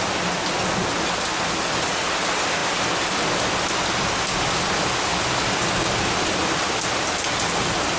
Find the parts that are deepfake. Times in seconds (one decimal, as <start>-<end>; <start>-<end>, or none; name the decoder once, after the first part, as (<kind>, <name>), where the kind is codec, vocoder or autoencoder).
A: none